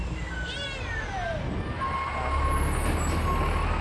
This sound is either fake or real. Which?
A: real